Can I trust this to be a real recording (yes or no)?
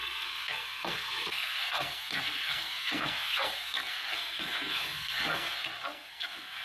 no